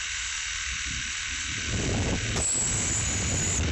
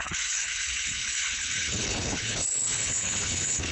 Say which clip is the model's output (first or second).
second